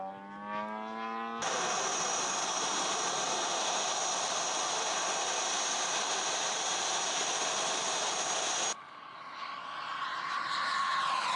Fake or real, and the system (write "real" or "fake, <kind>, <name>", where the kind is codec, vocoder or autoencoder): real